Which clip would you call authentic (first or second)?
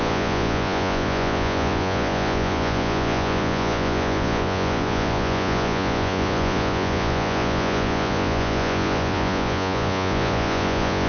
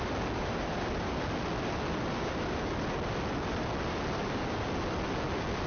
second